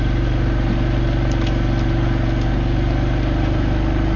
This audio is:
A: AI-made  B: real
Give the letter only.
B